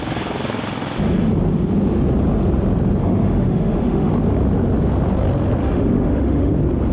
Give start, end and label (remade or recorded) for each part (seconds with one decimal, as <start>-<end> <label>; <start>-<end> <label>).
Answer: 0.0-3.0 recorded; 3.0-4.1 remade; 4.1-5.6 recorded; 5.6-6.5 remade; 6.5-6.9 recorded